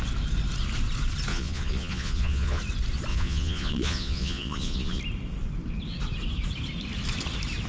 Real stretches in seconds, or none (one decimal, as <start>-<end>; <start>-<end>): 0.0-1.3; 2.6-3.1; 5.0-7.7